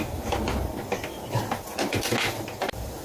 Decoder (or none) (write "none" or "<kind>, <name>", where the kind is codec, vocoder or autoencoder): none